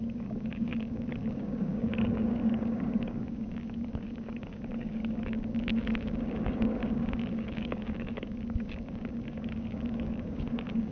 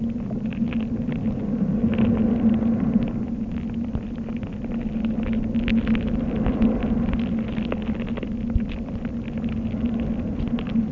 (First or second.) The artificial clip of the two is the first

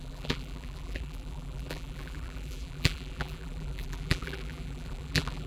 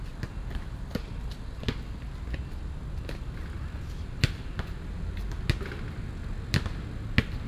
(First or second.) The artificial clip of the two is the first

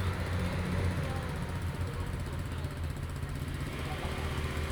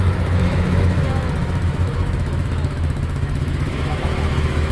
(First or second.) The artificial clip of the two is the second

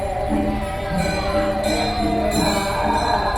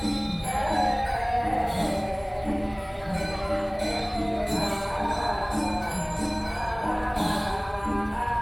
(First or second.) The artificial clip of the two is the second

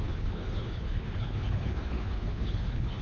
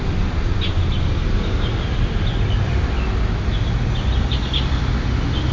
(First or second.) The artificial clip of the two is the first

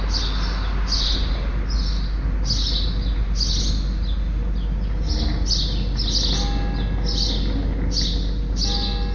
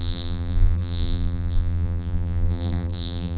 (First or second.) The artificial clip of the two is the second